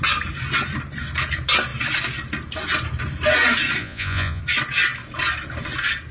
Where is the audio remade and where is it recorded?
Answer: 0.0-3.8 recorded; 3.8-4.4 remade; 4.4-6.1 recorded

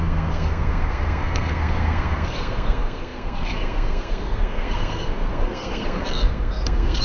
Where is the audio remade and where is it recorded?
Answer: 0.0-7.0 remade

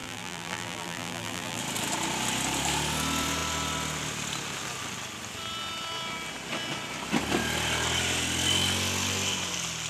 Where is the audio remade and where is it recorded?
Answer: 0.0-1.6 remade; 1.6-9.9 recorded

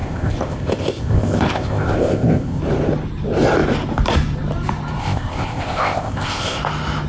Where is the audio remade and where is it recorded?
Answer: 0.0-2.6 remade; 2.6-5.0 recorded; 5.0-6.6 remade; 6.6-7.1 recorded

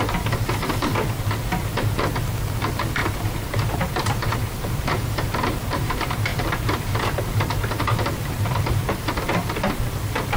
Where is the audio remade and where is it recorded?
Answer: 0.0-0.9 remade; 0.9-2.6 recorded; 2.6-3.0 remade; 3.0-3.7 recorded; 3.7-10.4 remade

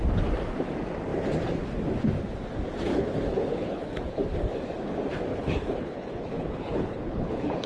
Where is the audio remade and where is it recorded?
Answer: 0.0-2.9 recorded; 2.9-4.2 remade; 4.2-5.3 recorded; 5.3-7.7 remade